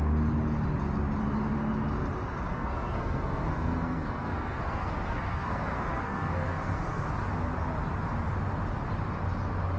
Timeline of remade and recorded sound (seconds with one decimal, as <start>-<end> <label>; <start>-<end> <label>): 0.0-2.5 recorded; 2.5-7.1 remade; 7.1-9.8 recorded